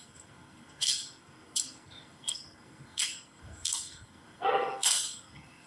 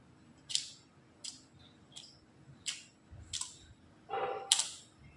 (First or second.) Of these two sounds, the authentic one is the second